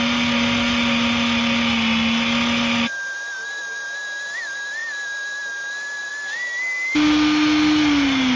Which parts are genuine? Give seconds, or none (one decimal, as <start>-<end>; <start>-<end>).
0.0-8.4